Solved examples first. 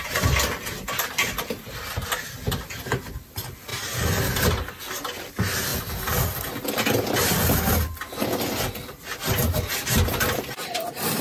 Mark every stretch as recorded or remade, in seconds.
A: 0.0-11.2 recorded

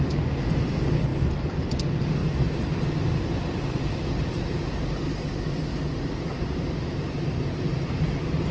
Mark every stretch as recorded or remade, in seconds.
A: 0.0-2.2 recorded; 2.2-5.3 remade; 5.3-5.7 recorded; 5.7-7.9 remade; 7.9-8.5 recorded

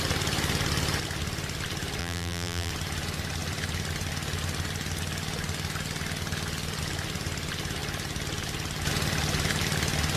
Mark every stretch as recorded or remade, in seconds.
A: 0.0-2.0 recorded; 2.0-2.7 remade; 2.7-10.2 recorded

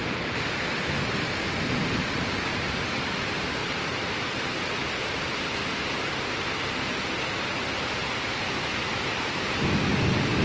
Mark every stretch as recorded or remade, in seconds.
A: 0.0-3.6 recorded; 3.6-5.6 remade; 5.6-8.0 recorded; 8.0-9.5 remade; 9.5-10.4 recorded

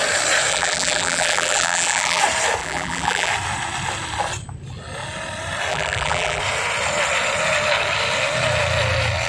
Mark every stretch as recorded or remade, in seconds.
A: 0.0-0.5 recorded; 0.5-2.2 remade; 2.2-2.6 recorded; 2.6-3.3 remade; 3.3-5.7 recorded; 5.7-6.4 remade; 6.4-9.3 recorded

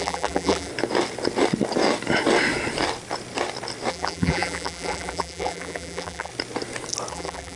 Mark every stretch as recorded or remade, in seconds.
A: 0.0-0.7 remade; 0.7-3.9 recorded; 3.9-6.3 remade; 6.3-7.1 recorded; 7.1-7.6 remade